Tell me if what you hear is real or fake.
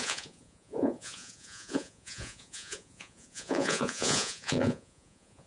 fake